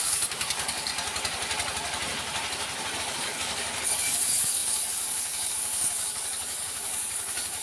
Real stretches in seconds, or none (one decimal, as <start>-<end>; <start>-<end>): 0.9-3.0